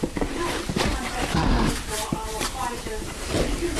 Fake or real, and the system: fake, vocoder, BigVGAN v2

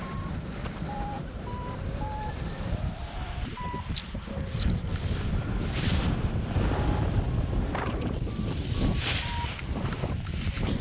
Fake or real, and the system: fake, vocoder, BigVGAN v2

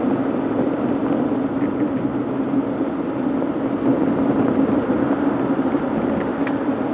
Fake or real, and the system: fake, vocoder, BigVGAN v2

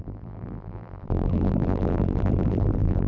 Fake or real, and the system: fake, vocoder, BigVGAN v2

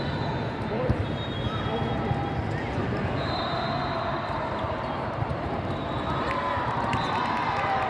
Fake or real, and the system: fake, vocoder, BigVGAN v2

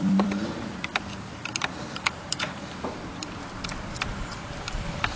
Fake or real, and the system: fake, vocoder, BigVGAN v2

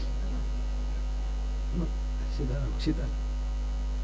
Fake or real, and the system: real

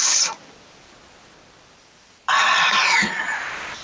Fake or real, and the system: fake, vocoder, BigVGAN v2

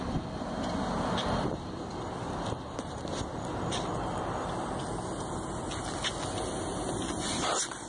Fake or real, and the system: real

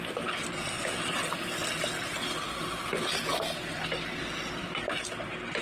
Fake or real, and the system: real